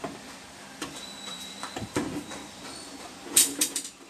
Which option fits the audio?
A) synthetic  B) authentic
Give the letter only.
A